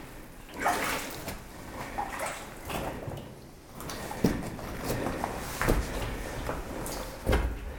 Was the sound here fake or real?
real